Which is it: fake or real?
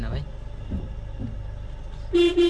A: real